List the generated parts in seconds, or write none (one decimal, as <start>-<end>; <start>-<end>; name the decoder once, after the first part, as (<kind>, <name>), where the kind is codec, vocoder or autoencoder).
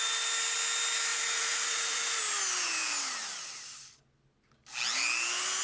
1.1-2.2 (vocoder, Vocos)